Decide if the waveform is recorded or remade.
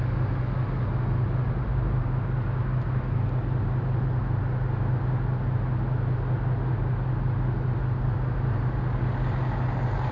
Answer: recorded